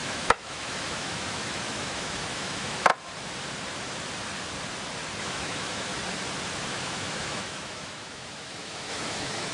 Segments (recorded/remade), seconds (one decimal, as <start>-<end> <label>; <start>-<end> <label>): 0.0-2.9 remade; 2.9-5.2 recorded; 5.2-5.9 remade; 5.9-6.7 recorded; 6.7-9.5 remade

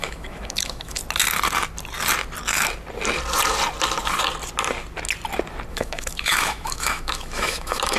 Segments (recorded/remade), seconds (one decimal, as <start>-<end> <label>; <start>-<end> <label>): 0.0-1.0 remade; 1.0-5.7 recorded; 5.7-8.0 remade

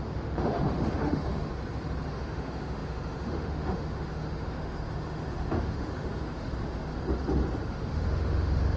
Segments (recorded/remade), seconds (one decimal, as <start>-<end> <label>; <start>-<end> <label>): 0.0-1.5 remade; 1.5-2.1 recorded; 2.1-6.9 remade; 6.9-7.7 recorded; 7.7-8.8 remade

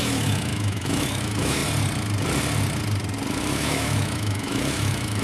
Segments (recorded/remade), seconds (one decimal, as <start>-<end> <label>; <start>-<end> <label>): 0.0-1.6 remade; 1.6-3.3 recorded; 3.3-5.2 remade

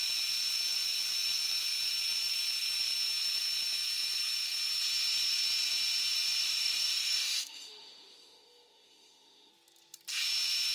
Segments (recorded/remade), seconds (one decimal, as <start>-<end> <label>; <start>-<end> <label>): 0.0-6.4 recorded; 6.4-9.5 remade; 9.5-10.7 recorded

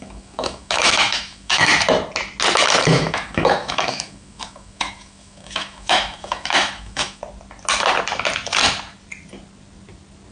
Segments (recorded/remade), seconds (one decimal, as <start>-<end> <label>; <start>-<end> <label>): 0.0-1.7 remade; 1.7-2.8 recorded; 2.8-7.2 remade; 7.2-10.3 recorded